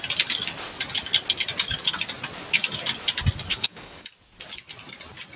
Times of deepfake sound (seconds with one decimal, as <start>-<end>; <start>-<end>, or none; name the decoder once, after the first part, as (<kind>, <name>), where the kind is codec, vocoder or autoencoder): 3.5-4.1 (codec, DAC)